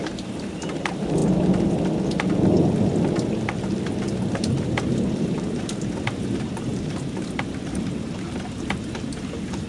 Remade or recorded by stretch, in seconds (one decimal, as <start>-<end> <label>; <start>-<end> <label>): 0.0-1.2 remade; 1.2-4.3 recorded; 4.3-9.7 remade